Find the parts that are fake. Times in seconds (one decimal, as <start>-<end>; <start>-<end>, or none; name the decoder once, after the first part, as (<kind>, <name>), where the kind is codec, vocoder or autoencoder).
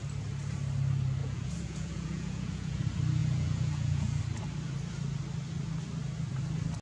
1.2-2.8 (vocoder, Vocos); 3.2-4.2